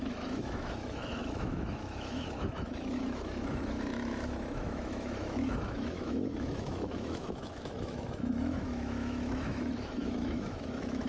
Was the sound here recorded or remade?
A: remade